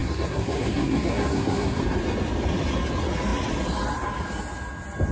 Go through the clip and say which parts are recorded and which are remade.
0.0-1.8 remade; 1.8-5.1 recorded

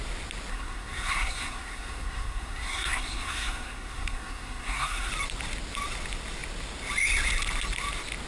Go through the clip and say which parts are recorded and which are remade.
0.0-0.5 recorded; 0.5-5.1 remade; 5.1-8.3 recorded

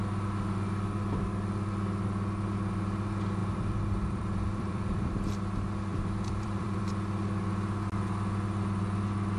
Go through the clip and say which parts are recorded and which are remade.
0.0-3.4 recorded; 3.4-5.1 remade; 5.1-5.9 recorded; 5.9-6.9 remade; 6.9-9.4 recorded

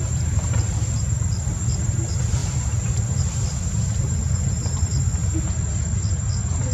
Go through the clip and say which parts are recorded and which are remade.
0.0-6.7 recorded

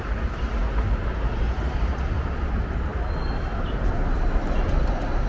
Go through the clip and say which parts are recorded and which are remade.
0.0-5.3 recorded

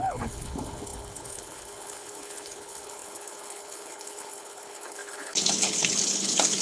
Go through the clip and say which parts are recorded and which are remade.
0.0-6.6 remade